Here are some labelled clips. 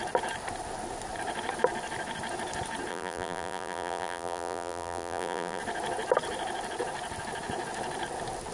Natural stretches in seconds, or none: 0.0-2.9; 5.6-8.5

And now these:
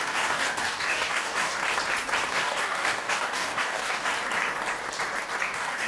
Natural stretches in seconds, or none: 1.6-2.3; 4.1-5.4

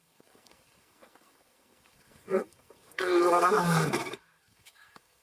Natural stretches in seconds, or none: none